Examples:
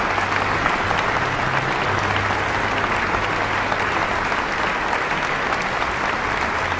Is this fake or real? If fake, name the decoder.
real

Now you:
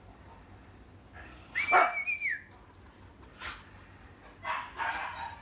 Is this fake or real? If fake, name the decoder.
real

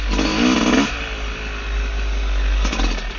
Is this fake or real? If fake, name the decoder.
real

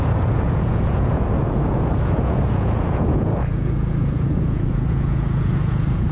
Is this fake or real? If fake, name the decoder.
fake, vocoder, Vocos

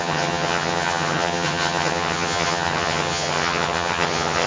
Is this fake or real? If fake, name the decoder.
fake, vocoder, HiFi-GAN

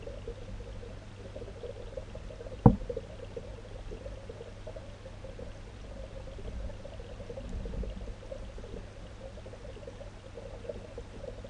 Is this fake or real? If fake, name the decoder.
real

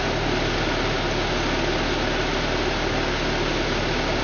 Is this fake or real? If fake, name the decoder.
real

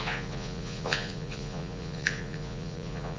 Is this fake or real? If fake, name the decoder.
fake, vocoder, Vocos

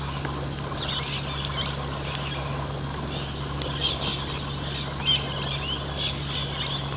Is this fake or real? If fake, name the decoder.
real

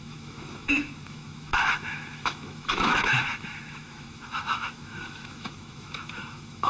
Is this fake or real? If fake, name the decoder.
fake, autoencoder, DAC-VAE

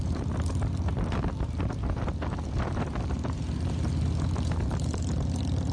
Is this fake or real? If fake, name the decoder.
fake, vocoder, BigVGAN v2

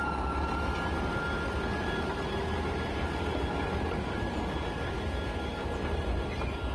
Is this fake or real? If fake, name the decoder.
real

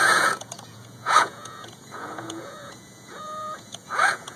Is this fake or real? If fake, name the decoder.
fake, vocoder, Vocos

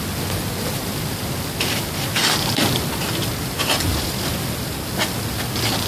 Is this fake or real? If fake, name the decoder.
real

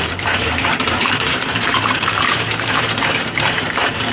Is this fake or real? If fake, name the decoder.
fake, vocoder, BigVGAN v2